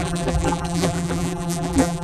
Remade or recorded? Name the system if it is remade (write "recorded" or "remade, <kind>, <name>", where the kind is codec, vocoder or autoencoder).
remade, vocoder, BigVGAN v2